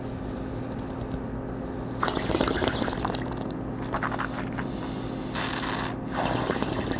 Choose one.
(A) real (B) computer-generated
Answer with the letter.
A